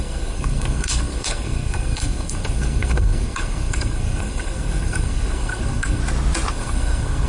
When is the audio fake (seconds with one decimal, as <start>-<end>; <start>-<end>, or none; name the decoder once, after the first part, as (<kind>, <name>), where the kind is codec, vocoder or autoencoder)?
0.0-6.0 (codec, SNAC); 6.5-7.3

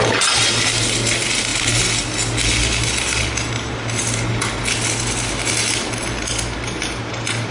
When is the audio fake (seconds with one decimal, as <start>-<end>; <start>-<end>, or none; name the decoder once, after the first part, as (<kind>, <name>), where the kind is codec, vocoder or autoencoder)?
none

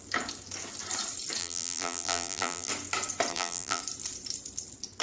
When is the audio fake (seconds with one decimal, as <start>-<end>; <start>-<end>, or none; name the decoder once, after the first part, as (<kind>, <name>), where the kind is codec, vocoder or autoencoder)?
1.4-2.7 (vocoder, BigVGAN v2); 3.3-3.8

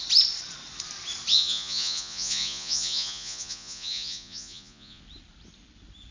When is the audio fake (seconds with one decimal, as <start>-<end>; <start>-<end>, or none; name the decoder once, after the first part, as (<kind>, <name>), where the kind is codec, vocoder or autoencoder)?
1.3-5.0 (vocoder, Vocos)

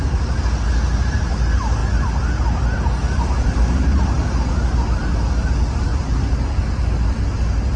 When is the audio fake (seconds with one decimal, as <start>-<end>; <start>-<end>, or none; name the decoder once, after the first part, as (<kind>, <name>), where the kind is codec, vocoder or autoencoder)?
none